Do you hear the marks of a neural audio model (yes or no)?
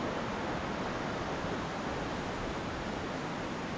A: no